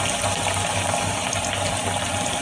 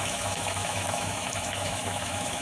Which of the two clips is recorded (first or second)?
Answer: first